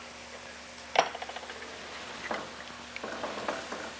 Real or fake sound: real